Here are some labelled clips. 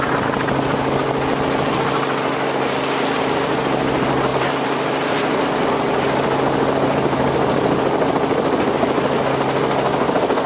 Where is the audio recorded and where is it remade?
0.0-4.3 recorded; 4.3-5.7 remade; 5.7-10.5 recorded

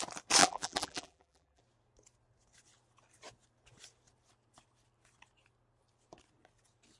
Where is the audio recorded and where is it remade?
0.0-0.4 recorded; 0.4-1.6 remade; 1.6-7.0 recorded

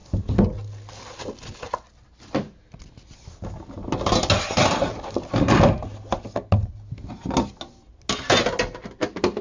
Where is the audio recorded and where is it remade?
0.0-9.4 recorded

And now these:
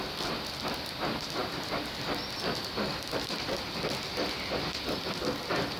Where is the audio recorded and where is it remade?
0.0-5.8 recorded

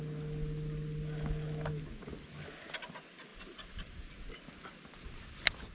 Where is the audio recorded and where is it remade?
0.0-3.3 recorded; 3.3-4.3 remade; 4.3-5.7 recorded

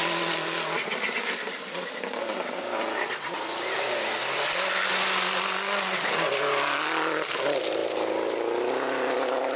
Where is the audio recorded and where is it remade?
0.0-9.6 recorded